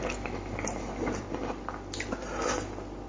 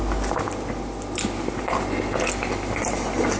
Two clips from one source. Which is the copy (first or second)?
first